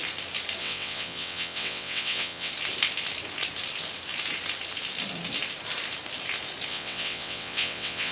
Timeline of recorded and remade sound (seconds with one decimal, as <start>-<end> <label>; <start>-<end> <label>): 0.0-0.6 recorded; 0.6-2.5 remade; 2.5-6.7 recorded; 6.7-8.1 remade